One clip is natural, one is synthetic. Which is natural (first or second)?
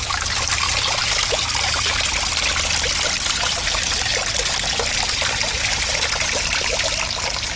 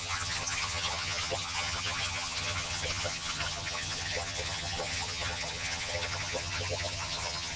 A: first